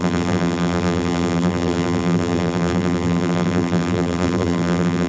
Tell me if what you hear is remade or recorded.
remade